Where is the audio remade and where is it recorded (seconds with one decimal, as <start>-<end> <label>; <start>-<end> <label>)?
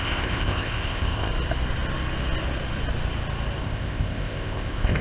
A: 0.0-1.3 remade; 1.3-3.6 recorded; 3.6-5.0 remade